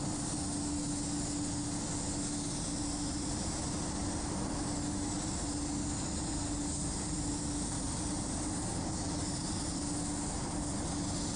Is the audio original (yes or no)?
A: yes